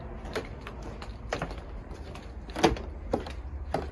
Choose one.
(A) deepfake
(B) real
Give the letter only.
B